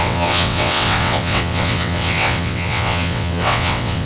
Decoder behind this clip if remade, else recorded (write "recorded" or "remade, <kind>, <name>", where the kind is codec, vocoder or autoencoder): remade, vocoder, WaveNeXt